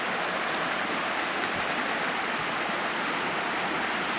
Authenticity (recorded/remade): recorded